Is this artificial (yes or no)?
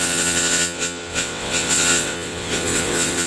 yes